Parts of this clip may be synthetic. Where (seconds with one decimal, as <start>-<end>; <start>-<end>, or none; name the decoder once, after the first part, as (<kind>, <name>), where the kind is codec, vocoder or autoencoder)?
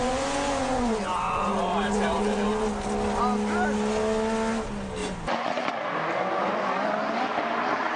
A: 0.0-2.5 (vocoder, Vocos); 5.0-5.7